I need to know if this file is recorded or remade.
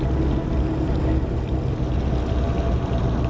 recorded